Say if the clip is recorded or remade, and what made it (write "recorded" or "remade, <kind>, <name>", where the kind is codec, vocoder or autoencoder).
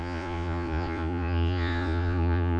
remade, vocoder, Vocos